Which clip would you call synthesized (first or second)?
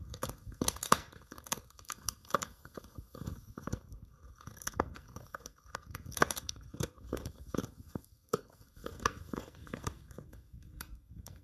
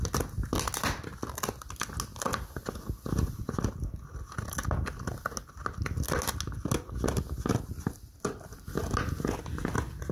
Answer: first